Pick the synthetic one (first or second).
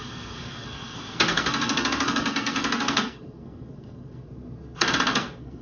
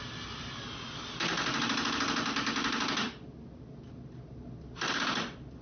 first